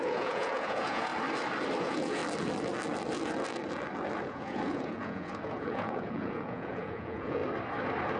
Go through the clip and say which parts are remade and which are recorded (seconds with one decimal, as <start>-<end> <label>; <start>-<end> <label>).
0.0-1.1 remade; 1.1-1.8 recorded; 1.8-2.2 remade; 2.2-4.2 recorded; 4.2-7.4 remade; 7.4-8.2 recorded